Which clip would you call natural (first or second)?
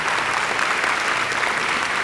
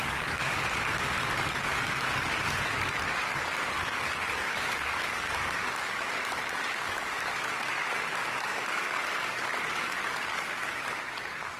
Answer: first